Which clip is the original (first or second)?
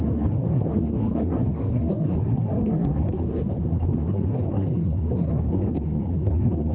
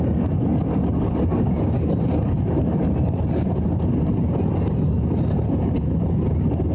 second